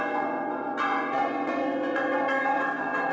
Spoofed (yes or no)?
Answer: yes